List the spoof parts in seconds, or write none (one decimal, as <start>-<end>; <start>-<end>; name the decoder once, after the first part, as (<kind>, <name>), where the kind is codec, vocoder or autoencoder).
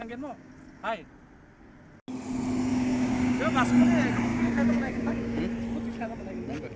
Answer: 0.0-0.5 (codec, DAC); 2.7-3.4; 4.3-5.4